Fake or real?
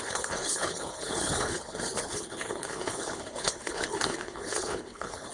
fake